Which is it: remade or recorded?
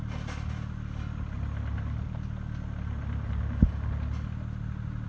recorded